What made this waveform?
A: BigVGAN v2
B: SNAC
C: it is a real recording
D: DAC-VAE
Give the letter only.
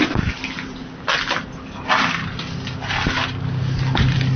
C